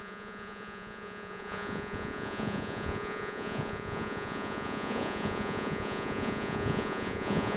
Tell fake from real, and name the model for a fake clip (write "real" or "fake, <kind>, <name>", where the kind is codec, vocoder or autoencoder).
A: fake, vocoder, Vocos